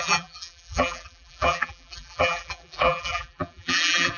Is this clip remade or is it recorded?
remade